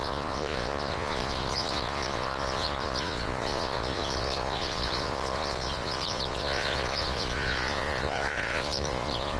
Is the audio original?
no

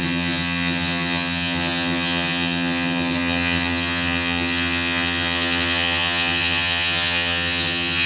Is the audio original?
no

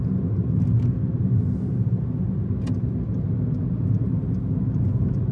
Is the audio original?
yes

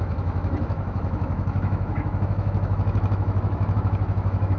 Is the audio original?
no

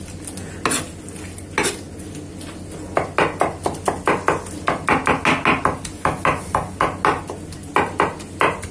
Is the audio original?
yes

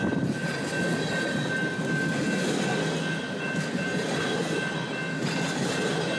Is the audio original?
yes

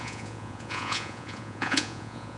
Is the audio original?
no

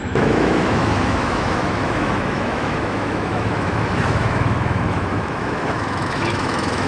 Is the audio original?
no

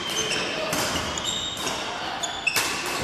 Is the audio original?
yes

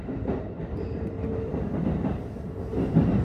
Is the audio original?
yes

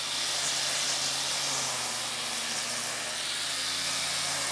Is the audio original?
yes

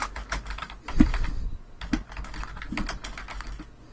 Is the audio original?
yes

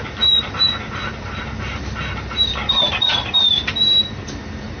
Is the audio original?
yes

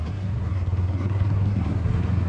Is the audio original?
no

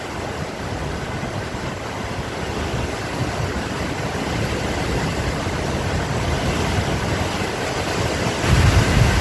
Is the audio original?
yes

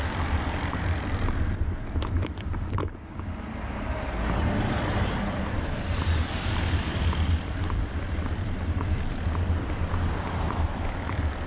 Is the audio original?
no